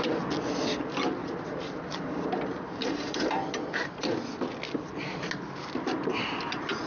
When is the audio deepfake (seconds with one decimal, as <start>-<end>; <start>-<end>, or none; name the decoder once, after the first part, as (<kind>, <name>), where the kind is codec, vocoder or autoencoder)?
1.2-4.1 (vocoder, BigVGAN v2)